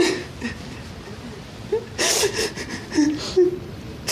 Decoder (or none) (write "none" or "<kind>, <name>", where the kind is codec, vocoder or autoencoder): none